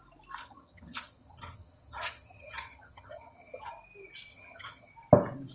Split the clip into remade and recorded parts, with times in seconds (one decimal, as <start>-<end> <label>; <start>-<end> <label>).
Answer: 0.0-0.4 recorded; 0.4-3.7 remade; 3.7-4.3 recorded; 4.3-4.9 remade; 4.9-5.5 recorded